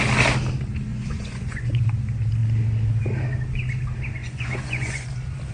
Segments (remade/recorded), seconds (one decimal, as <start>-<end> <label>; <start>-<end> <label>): 0.0-0.9 recorded; 0.9-1.8 remade; 1.8-4.2 recorded; 4.2-5.1 remade; 5.1-5.5 recorded